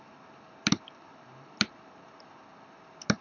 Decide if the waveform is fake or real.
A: fake